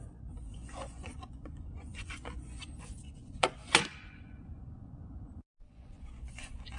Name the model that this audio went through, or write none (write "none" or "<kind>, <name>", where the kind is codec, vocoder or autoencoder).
vocoder, Vocos